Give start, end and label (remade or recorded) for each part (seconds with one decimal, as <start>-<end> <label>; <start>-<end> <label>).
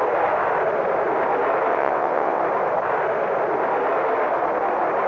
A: 0.0-1.7 recorded; 1.7-2.4 remade; 2.4-5.1 recorded